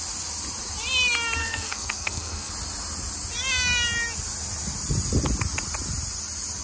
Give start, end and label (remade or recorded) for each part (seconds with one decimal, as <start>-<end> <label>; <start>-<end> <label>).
0.0-1.4 recorded; 1.4-2.5 remade; 2.5-6.6 recorded